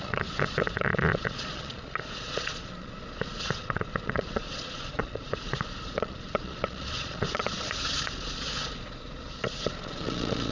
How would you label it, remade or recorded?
remade